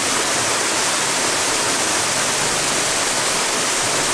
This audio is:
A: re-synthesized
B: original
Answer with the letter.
B